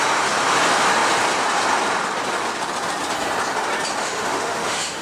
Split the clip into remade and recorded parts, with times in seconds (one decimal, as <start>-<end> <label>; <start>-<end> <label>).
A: 0.0-4.0 recorded; 4.0-5.0 remade